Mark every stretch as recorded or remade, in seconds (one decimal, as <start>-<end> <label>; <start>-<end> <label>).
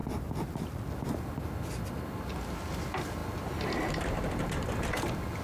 0.0-5.4 recorded